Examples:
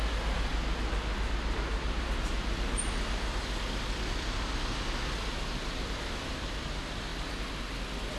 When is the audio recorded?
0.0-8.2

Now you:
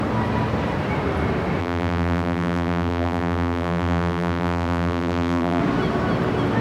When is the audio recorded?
0.0-1.6; 5.6-6.6

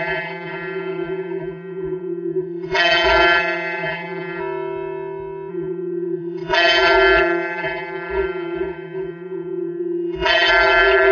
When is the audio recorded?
4.4-5.5

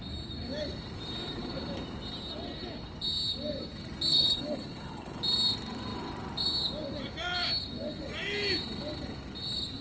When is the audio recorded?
0.0-4.1; 5.2-9.8

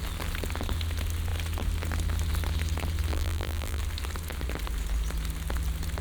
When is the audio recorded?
0.0-3.1; 3.8-6.0

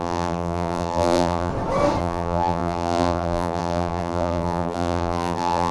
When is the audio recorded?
1.5-2.0

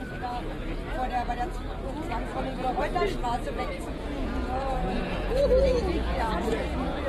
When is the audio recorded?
0.0-3.2

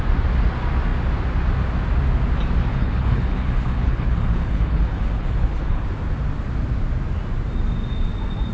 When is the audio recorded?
0.0-2.7; 5.9-8.5